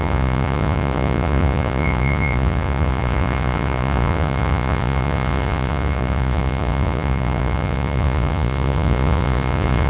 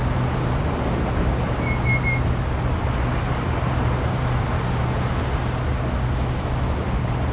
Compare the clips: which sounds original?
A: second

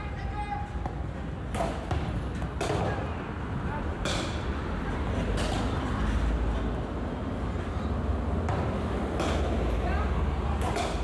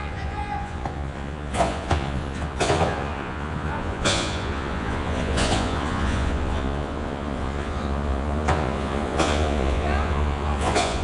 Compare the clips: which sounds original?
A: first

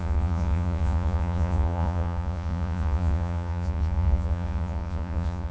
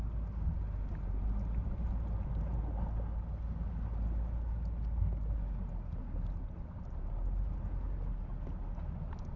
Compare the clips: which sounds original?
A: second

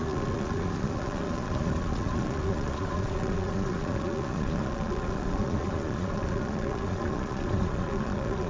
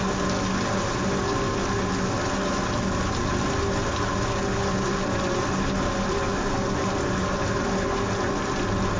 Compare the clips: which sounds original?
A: second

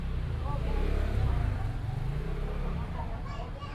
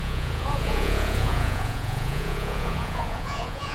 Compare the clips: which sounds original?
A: first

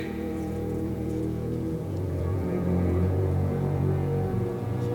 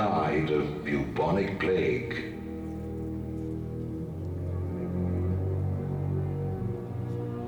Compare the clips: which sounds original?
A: second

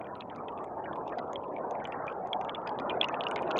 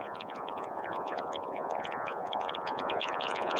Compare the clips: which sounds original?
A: first